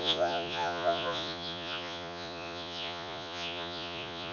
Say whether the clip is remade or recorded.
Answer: remade